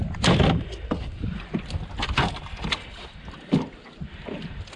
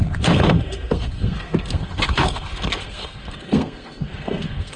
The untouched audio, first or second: first